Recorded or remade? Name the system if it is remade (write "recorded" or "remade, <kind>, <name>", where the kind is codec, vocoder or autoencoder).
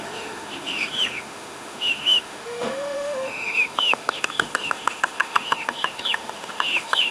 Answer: remade, autoencoder, DAC-VAE